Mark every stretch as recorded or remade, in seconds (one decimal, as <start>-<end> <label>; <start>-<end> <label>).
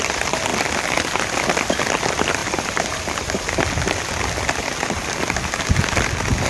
0.0-0.5 remade; 0.5-1.4 recorded; 1.4-2.4 remade; 2.4-6.5 recorded